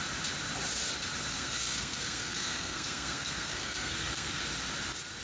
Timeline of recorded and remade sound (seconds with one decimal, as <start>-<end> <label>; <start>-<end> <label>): 0.0-1.3 recorded; 1.3-4.4 remade; 4.4-5.2 recorded